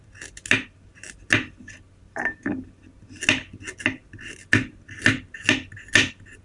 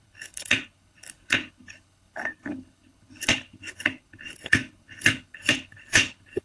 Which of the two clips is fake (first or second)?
second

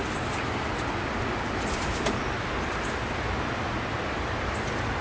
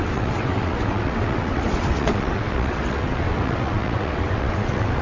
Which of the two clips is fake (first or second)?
second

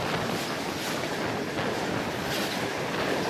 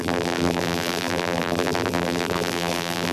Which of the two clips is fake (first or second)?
second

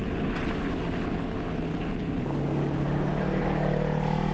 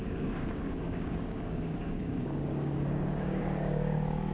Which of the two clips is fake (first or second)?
second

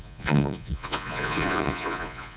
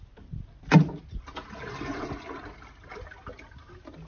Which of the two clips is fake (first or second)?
first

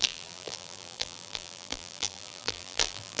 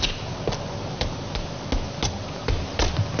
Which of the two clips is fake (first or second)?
first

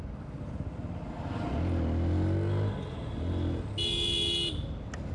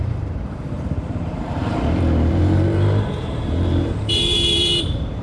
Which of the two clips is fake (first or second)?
second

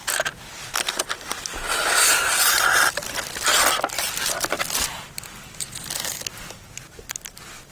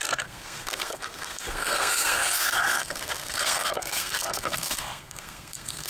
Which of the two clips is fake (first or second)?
second